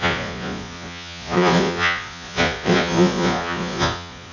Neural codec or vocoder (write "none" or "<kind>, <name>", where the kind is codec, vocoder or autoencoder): vocoder, Vocos